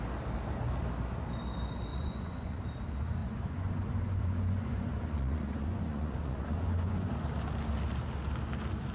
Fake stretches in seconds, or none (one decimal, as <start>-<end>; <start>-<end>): 1.9-2.6; 3.2-7.1